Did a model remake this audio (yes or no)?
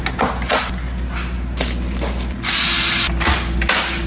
no